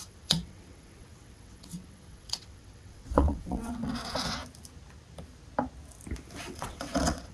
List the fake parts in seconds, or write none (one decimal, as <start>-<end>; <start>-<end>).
0.0-4.4; 6.4-7.3